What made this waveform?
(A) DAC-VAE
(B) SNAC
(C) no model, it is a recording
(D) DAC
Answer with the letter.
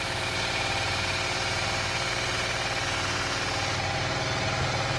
C